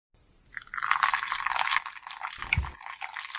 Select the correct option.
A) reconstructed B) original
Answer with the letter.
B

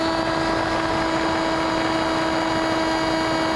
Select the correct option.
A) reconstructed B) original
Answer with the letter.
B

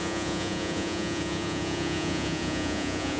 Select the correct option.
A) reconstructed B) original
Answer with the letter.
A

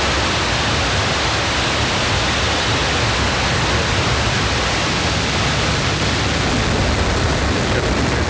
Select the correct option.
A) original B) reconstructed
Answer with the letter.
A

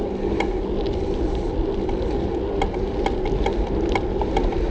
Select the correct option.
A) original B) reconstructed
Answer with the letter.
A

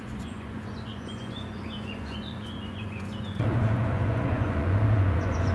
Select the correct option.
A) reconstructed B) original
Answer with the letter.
A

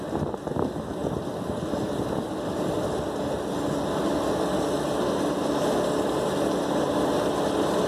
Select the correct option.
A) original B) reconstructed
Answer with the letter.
A